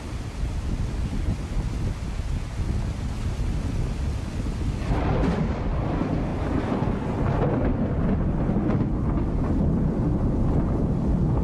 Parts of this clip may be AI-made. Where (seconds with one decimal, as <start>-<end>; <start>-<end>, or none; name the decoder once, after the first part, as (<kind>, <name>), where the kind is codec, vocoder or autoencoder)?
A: none